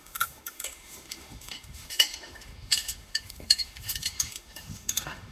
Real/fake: fake